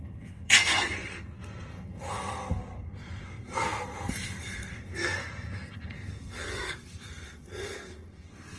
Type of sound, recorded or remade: remade